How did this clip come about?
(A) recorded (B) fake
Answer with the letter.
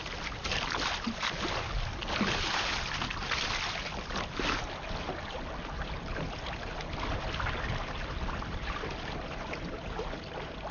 A